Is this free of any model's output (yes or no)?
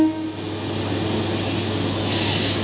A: yes